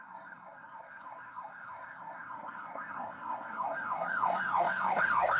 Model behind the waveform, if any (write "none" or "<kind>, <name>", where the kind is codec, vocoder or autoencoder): codec, SNAC